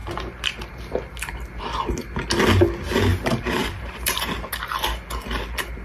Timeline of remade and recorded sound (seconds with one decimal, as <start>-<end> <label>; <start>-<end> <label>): 0.0-3.1 recorded; 3.1-4.3 remade; 4.3-5.8 recorded